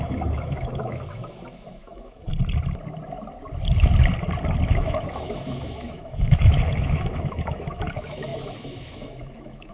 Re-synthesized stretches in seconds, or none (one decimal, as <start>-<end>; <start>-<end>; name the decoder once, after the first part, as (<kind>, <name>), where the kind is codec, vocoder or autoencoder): 0.0-2.3 (autoencoder, DAC-VAE); 4.7-9.7